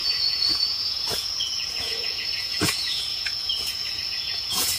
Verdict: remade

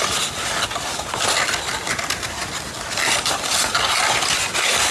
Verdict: recorded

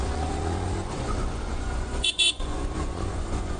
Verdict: remade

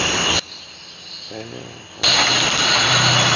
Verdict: recorded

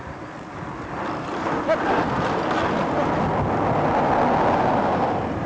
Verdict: recorded